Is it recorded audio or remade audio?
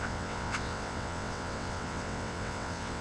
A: remade